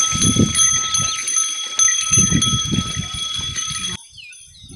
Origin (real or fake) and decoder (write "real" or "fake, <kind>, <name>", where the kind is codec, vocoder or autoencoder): real